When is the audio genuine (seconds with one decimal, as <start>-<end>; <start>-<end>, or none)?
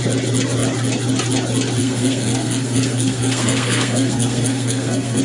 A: 0.0-1.8